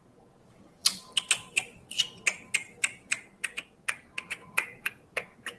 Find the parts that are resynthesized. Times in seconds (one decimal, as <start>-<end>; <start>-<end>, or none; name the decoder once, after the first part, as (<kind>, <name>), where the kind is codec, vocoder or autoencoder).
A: 0.0-0.9 (vocoder, Vocos); 4.3-5.6